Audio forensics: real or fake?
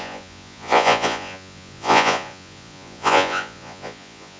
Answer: fake